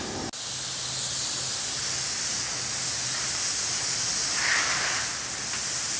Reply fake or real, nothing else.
real